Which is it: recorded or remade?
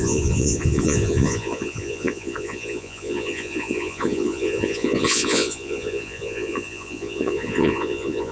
remade